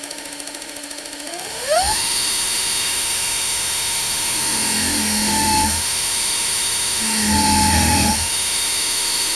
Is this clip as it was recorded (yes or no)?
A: no